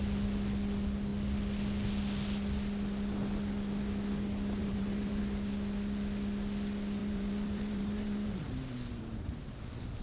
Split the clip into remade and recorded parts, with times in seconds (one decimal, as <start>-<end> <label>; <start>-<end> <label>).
0.0-4.6 recorded; 4.6-5.2 remade; 5.2-7.0 recorded; 7.0-9.0 remade; 9.0-10.0 recorded